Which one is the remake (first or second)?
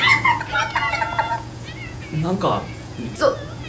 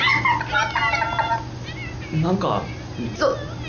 first